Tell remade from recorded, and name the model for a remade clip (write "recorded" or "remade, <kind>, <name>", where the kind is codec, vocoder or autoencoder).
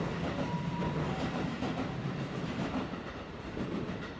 remade, vocoder, BigVGAN v2